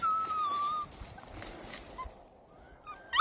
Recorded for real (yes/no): yes